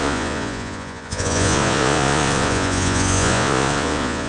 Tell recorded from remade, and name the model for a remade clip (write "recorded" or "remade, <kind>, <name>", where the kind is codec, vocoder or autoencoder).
remade, vocoder, Vocos